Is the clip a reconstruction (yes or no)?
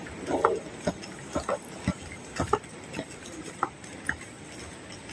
no